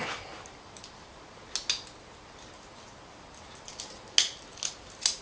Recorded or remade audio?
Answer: recorded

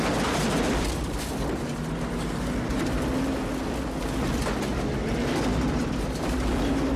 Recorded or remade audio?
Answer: recorded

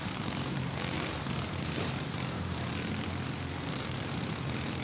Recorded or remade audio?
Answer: remade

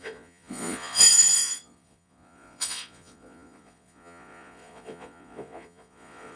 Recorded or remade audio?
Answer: remade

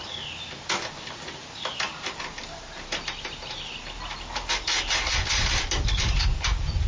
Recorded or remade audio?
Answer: recorded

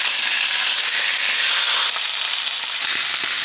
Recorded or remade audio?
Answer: recorded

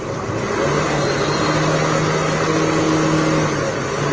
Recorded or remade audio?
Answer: recorded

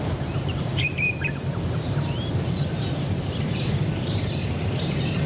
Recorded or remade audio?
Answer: remade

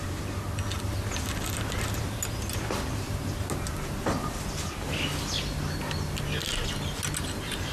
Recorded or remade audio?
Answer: recorded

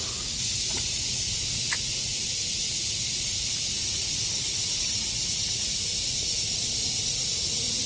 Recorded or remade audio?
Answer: remade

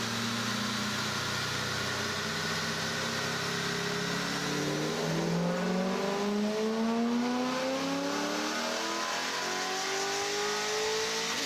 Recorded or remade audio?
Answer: recorded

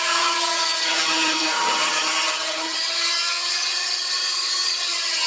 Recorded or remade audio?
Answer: remade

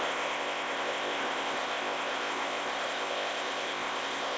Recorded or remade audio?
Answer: remade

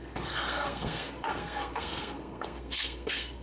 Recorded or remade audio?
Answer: remade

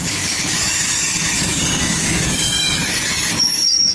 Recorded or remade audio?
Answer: remade